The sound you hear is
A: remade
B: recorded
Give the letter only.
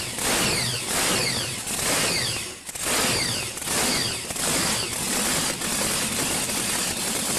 B